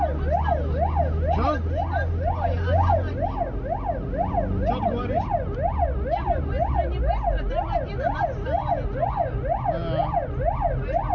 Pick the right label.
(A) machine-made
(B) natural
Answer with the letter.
B